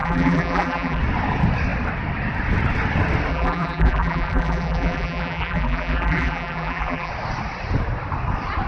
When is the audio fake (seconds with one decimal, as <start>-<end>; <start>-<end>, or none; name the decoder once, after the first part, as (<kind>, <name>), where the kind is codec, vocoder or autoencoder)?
0.0-1.0 (vocoder, BigVGAN v2); 3.3-7.1